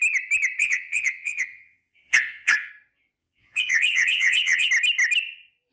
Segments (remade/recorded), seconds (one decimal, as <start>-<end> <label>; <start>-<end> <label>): 0.0-0.6 recorded; 0.6-2.7 remade; 2.7-3.2 recorded; 3.2-4.7 remade; 4.7-5.7 recorded